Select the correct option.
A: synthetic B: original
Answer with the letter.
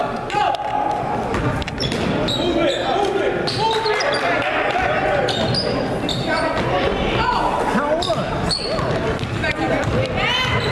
B